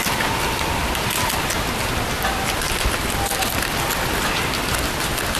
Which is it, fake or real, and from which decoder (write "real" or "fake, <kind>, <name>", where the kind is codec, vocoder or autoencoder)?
real